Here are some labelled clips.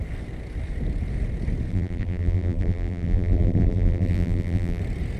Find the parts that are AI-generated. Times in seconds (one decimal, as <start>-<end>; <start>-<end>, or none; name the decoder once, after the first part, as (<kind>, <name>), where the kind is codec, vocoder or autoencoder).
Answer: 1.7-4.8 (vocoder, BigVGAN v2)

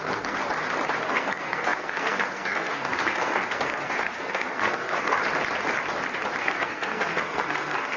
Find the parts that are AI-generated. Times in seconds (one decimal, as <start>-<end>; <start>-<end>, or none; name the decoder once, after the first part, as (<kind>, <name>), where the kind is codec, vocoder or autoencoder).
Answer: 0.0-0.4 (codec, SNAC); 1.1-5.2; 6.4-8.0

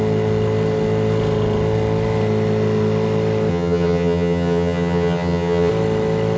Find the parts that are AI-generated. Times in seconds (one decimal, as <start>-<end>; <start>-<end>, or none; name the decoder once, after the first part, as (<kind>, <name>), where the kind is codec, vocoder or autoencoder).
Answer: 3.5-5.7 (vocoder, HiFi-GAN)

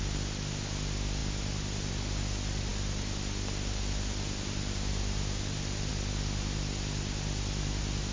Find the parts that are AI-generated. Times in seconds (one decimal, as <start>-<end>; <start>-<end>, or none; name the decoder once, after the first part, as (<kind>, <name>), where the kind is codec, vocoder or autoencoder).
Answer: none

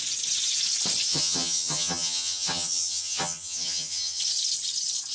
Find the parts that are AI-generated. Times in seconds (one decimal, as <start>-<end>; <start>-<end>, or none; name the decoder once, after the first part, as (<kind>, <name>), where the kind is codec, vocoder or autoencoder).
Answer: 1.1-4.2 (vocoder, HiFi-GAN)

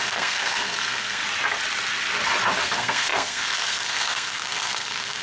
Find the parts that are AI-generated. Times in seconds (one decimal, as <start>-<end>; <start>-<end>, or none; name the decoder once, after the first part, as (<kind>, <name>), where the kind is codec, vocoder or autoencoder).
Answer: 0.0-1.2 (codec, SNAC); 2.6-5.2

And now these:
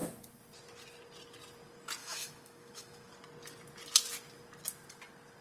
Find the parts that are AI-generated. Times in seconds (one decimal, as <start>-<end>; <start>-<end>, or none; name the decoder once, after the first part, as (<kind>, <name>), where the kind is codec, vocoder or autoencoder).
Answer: 2.0-3.1 (autoencoder, DAC-VAE)

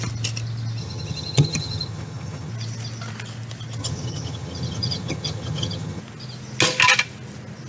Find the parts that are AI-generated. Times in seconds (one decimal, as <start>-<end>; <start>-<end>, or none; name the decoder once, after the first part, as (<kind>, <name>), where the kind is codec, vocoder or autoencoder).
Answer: 0.8-2.5 (vocoder, HiFi-GAN); 3.8-6.0